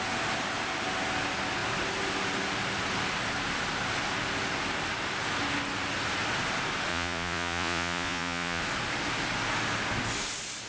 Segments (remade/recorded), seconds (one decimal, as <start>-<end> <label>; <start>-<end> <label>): 0.0-6.9 recorded; 6.9-8.6 remade; 8.6-10.7 recorded

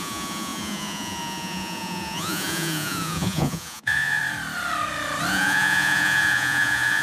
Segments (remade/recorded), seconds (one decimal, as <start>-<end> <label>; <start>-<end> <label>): 0.0-4.2 remade; 4.2-5.3 recorded; 5.3-7.0 remade

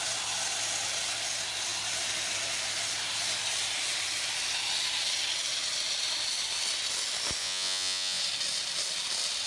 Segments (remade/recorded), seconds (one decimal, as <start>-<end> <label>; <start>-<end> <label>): 0.0-7.4 recorded; 7.4-8.2 remade; 8.2-9.5 recorded